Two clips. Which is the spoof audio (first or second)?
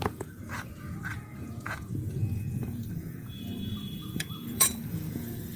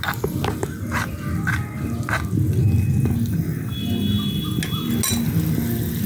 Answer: first